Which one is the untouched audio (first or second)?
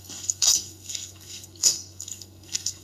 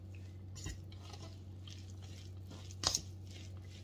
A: second